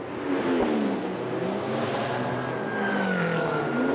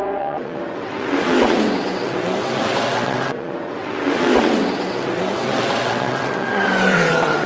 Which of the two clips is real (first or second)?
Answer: first